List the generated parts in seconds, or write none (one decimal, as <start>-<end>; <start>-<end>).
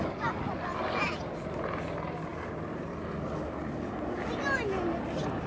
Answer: none